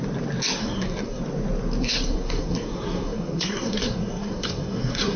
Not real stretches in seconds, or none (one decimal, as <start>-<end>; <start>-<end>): 0.6-1.2; 1.8-5.2